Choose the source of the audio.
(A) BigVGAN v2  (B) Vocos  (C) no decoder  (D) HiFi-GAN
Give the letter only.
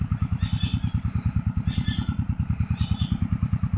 A